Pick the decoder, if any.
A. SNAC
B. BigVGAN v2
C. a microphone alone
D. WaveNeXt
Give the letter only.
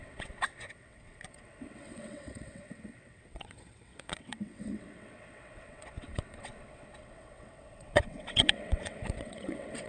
D